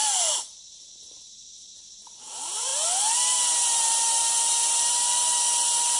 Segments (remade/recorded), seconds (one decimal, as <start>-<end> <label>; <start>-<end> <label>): 0.0-6.0 recorded